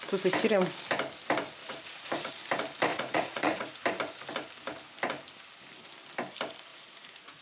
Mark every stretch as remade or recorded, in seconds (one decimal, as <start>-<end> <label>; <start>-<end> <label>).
0.0-1.6 recorded; 1.6-2.3 remade; 2.3-2.9 recorded; 2.9-3.7 remade; 3.7-6.7 recorded; 6.7-7.4 remade

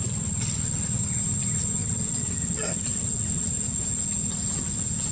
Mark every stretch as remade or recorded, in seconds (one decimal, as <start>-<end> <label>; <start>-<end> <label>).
0.0-1.8 recorded; 1.8-3.5 remade; 3.5-5.1 recorded

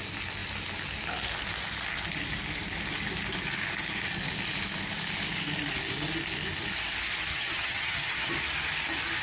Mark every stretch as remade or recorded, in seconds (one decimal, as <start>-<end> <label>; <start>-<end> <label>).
0.0-7.3 recorded; 7.3-8.3 remade; 8.3-9.2 recorded

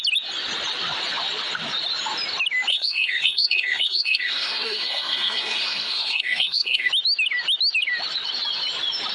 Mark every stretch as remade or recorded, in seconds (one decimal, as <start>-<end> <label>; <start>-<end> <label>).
0.0-2.7 recorded; 2.7-6.9 remade; 6.9-9.1 recorded

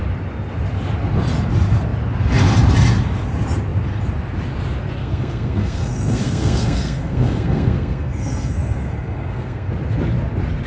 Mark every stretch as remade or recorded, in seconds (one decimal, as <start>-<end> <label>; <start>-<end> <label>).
0.0-5.0 recorded; 5.0-9.7 remade; 9.7-10.7 recorded

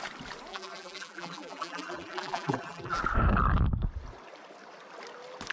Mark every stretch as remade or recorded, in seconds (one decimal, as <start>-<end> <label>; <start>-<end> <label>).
0.0-0.5 recorded; 0.5-3.0 remade; 3.0-5.5 recorded